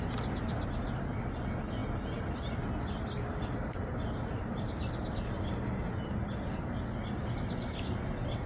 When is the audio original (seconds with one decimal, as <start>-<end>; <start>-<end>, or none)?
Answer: 0.0-8.5